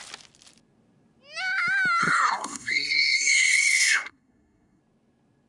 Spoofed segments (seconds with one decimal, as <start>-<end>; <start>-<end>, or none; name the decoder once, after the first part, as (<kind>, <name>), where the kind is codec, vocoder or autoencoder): 2.0-4.8 (codec, SNAC)